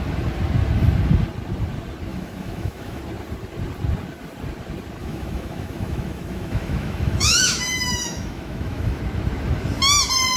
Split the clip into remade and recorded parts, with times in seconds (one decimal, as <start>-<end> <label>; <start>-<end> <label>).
0.0-2.1 recorded; 2.1-3.0 remade; 3.0-5.0 recorded; 5.0-9.0 remade; 9.0-10.4 recorded